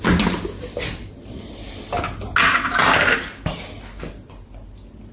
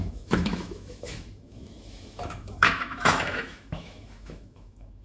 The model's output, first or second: second